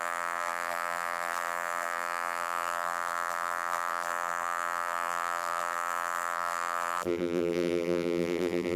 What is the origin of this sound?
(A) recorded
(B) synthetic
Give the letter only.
B